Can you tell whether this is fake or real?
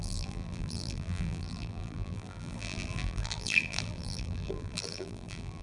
fake